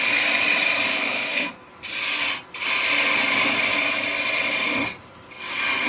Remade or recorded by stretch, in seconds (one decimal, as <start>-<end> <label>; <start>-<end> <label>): 0.0-0.9 recorded; 0.9-1.7 remade; 1.7-5.9 recorded